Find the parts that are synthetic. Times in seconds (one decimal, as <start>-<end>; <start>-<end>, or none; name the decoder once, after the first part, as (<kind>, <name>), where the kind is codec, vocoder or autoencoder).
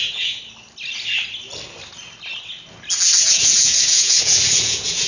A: 0.0-0.4 (vocoder, Vocos); 3.2-5.1